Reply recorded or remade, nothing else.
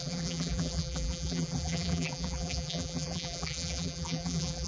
remade